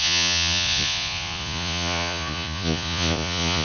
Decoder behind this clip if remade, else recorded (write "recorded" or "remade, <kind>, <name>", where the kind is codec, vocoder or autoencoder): remade, vocoder, Vocos